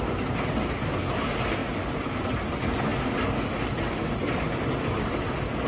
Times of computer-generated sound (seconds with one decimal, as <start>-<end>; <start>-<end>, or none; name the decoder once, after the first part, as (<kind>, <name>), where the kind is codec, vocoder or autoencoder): none